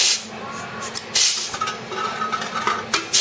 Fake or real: real